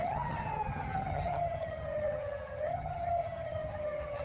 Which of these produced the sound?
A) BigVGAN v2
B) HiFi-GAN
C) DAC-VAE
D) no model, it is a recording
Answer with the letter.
B